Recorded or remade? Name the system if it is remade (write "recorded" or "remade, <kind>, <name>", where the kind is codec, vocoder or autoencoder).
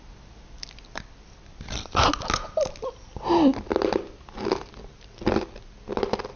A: recorded